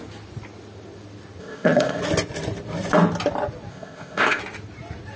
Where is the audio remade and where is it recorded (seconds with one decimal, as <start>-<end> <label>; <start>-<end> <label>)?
0.0-1.4 recorded; 1.4-2.0 remade; 2.0-3.7 recorded; 3.7-4.4 remade; 4.4-5.2 recorded